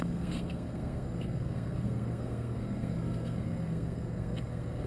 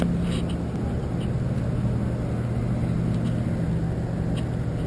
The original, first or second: second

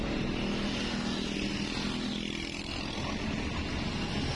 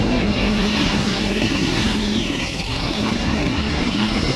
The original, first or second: first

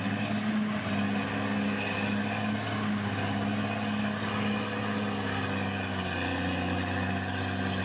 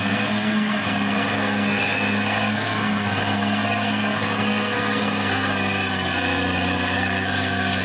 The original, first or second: first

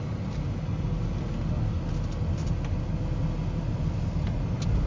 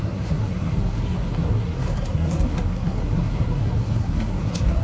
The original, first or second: first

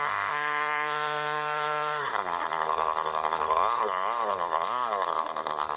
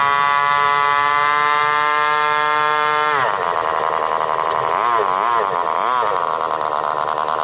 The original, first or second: second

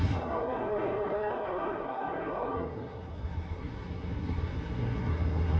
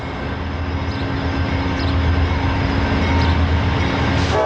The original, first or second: second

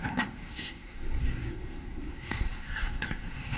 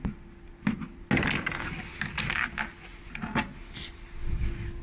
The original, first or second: second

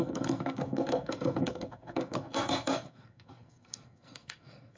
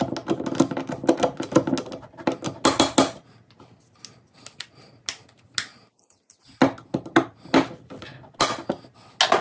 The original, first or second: second